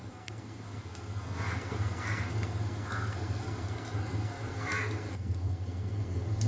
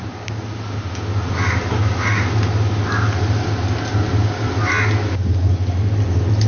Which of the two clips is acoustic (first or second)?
second